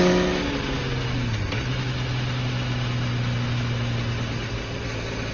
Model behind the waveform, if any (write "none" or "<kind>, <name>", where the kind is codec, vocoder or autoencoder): none